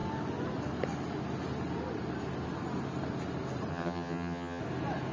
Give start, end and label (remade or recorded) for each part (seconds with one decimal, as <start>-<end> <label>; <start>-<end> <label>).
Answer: 0.0-3.7 recorded; 3.7-4.6 remade; 4.6-5.1 recorded